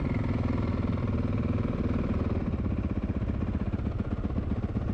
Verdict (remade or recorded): recorded